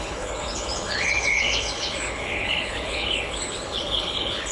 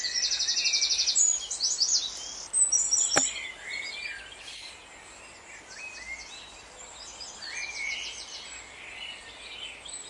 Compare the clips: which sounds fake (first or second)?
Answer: first